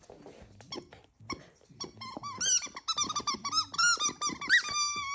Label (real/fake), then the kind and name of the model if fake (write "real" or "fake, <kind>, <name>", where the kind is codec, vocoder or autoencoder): real